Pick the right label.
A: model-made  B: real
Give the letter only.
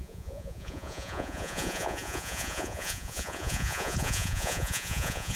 A